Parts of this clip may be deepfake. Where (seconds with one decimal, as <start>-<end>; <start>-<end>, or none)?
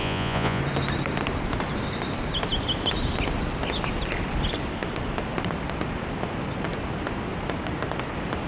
0.0-0.6